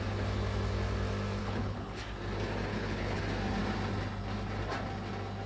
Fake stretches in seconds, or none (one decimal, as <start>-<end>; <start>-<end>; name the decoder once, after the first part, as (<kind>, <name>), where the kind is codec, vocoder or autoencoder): 1.4-2.0 (codec, HILCodec); 2.7-3.2